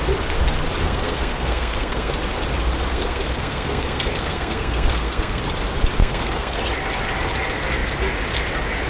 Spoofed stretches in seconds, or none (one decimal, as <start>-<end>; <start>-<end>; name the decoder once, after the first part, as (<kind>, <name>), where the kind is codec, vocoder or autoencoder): 0.8-2.1 (codec, SNAC); 2.9-5.4; 6.0-6.6